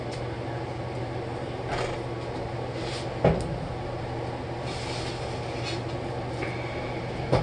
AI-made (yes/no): no